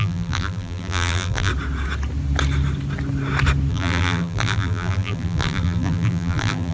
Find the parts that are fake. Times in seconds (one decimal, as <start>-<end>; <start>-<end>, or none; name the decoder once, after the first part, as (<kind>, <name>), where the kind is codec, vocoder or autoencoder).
0.0-1.5 (vocoder, BigVGAN v2); 3.7-6.7